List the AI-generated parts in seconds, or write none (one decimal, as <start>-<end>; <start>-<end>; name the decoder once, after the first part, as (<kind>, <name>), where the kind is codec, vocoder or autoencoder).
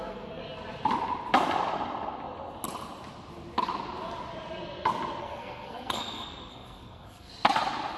0.0-0.4 (codec, SNAC); 5.2-7.3